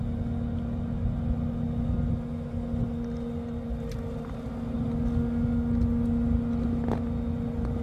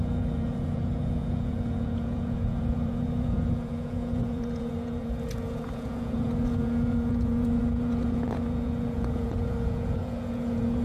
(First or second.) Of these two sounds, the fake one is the second